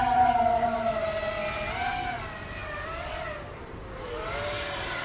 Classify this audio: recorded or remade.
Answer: recorded